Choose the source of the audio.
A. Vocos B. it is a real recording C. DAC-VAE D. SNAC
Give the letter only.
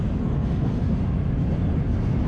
B